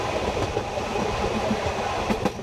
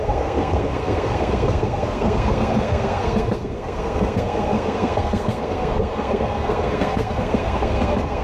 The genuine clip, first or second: first